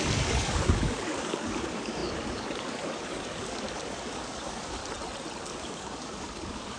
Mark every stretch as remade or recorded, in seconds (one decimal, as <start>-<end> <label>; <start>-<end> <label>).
0.0-4.8 remade; 4.8-5.4 recorded; 5.4-6.8 remade